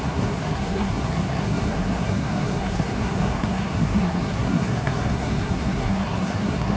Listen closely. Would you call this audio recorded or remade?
remade